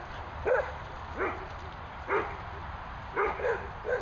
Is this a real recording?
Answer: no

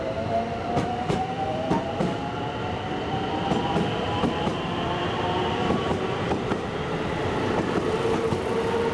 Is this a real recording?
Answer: no